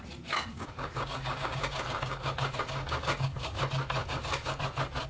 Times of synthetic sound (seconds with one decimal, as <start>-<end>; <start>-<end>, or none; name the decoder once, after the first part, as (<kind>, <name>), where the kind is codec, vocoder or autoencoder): 0.5-3.6 (codec, DAC); 4.0-4.6